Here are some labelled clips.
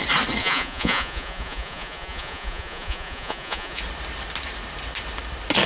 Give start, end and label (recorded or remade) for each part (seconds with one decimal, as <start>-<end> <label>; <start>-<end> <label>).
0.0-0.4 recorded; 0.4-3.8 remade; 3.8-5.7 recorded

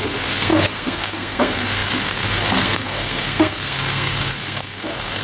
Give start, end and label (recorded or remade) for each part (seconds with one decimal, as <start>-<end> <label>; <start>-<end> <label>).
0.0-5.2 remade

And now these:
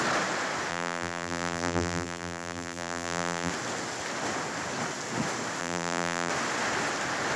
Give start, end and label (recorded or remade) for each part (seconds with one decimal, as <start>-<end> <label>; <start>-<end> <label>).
0.0-0.7 recorded; 0.7-3.5 remade; 3.5-5.6 recorded; 5.6-6.3 remade; 6.3-7.4 recorded

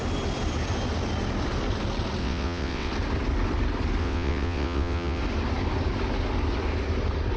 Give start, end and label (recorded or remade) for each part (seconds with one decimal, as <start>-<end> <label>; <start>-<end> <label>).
0.0-2.2 recorded; 2.2-2.9 remade; 2.9-4.0 recorded; 4.0-5.2 remade; 5.2-7.4 recorded

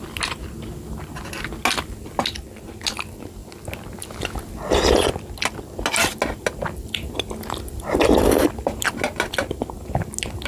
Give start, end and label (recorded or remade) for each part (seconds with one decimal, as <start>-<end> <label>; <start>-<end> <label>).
0.0-10.5 recorded